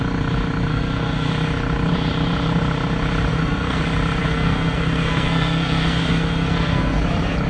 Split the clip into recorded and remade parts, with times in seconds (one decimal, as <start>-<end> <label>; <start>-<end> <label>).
0.0-0.7 recorded; 0.7-1.3 remade; 1.3-3.3 recorded; 3.3-3.8 remade; 3.8-4.2 recorded; 4.2-7.0 remade; 7.0-7.5 recorded